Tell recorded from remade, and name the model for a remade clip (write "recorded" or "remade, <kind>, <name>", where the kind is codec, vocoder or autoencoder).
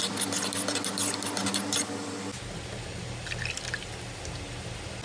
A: recorded